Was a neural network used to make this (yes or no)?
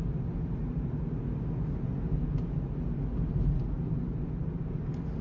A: no